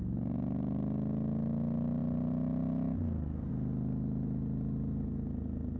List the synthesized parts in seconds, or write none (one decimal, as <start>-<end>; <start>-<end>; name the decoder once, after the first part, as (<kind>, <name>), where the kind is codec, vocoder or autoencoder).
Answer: none